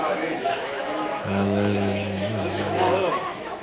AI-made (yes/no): yes